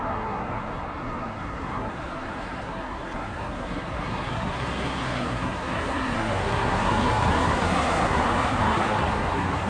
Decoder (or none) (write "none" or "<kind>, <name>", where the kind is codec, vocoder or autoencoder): codec, SNAC